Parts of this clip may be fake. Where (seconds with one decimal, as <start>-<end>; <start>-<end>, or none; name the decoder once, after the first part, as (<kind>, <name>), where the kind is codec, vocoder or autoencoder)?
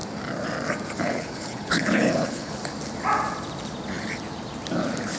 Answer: 1.0-2.6 (codec, HILCodec)